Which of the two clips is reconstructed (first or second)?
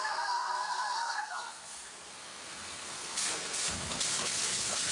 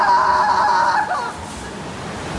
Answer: first